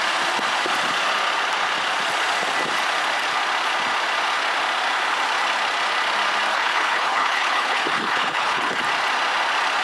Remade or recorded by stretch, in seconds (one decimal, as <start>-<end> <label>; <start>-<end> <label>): 0.0-6.5 recorded; 6.5-8.8 remade; 8.8-9.8 recorded